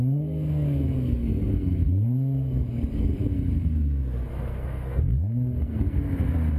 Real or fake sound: fake